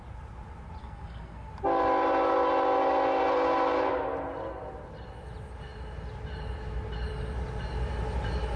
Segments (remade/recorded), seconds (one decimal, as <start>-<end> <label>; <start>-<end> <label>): 0.0-0.8 recorded; 0.8-1.5 remade; 1.5-8.6 recorded